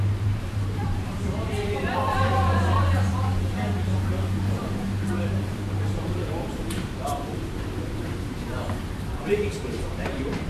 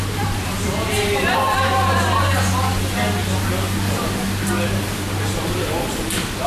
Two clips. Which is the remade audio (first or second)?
first